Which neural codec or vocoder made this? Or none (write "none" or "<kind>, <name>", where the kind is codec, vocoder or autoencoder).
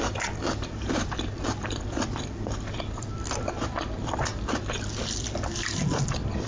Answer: vocoder, BigVGAN v2